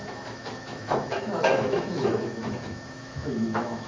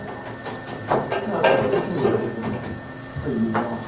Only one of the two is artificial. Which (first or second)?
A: first